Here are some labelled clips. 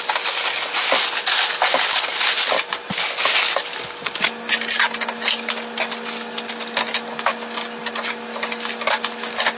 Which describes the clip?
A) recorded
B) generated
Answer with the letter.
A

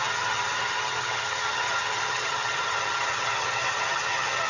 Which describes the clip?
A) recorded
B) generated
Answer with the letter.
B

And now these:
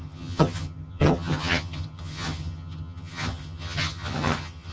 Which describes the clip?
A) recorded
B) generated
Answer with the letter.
B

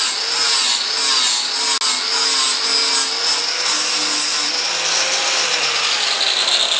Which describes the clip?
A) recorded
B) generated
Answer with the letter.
A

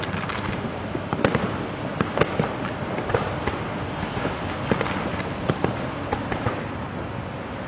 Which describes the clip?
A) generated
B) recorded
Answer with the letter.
B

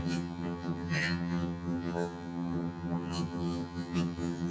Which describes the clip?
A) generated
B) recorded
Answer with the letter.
A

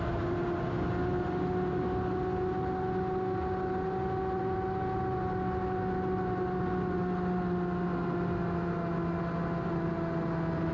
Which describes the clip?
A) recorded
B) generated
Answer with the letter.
A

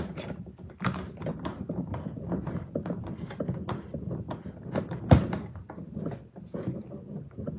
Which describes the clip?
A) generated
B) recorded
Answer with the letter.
B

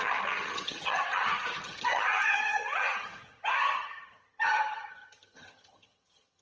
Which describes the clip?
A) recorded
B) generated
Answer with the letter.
B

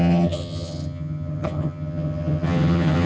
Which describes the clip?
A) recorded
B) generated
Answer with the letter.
B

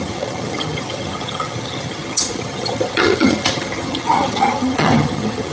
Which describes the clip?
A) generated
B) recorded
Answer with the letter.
A